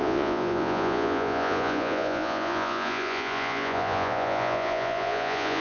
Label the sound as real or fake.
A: fake